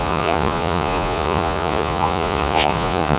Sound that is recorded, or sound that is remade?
remade